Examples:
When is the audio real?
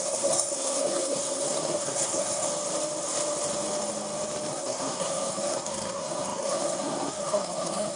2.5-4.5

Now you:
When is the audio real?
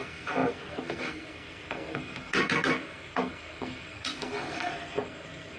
none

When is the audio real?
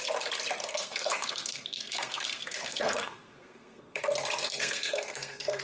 0.0-0.6; 4.0-4.4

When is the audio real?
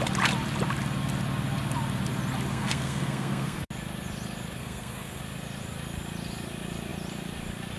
0.0-2.5; 3.7-4.6; 5.2-7.8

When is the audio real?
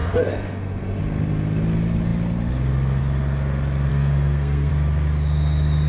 1.0-3.9; 4.7-5.9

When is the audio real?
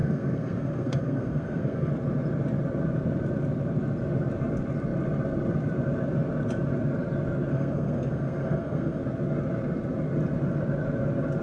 1.9-7.5; 9.0-11.4